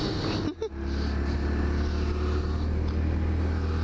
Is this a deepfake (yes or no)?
no